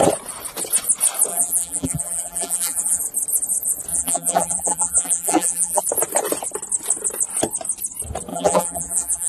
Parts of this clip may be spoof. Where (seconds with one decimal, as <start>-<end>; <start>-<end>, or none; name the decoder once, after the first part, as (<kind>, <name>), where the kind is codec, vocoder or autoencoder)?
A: 1.3-3.0 (vocoder, BigVGAN v2); 3.9-5.8; 8.3-9.3